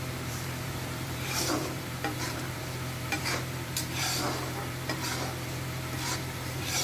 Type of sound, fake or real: fake